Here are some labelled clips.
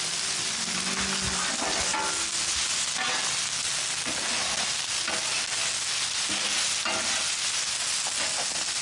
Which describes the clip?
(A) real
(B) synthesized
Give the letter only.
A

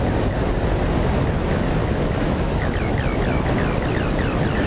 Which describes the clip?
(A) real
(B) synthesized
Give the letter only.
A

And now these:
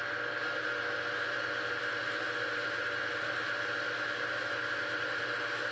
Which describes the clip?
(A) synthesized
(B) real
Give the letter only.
B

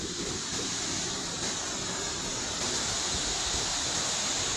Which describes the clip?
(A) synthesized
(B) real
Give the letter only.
A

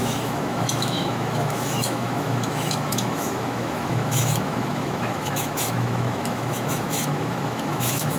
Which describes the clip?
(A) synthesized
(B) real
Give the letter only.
A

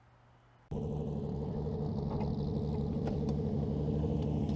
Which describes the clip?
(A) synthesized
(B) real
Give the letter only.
B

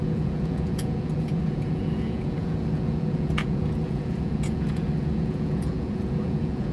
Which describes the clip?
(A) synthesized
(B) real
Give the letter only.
A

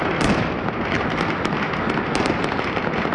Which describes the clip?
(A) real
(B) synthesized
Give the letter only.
A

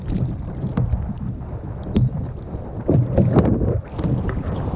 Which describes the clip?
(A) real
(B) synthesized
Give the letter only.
A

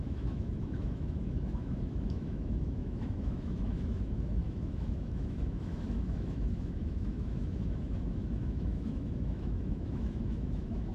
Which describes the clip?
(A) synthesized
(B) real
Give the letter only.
A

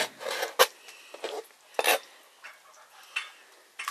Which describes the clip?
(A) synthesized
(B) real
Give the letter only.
B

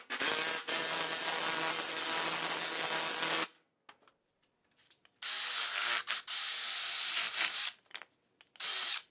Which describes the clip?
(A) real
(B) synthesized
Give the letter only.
A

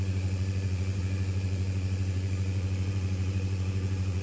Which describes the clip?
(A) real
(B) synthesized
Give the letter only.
B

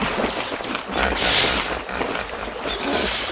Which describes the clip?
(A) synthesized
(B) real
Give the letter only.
B